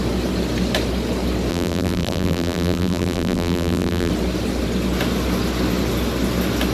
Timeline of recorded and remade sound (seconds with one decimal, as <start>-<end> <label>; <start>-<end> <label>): 0.0-1.5 recorded; 1.5-4.1 remade; 4.1-6.7 recorded